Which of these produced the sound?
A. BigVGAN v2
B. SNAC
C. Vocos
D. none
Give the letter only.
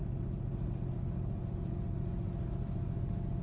D